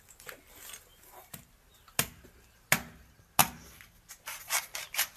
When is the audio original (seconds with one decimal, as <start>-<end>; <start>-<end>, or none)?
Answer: 0.0-0.9; 1.5-5.2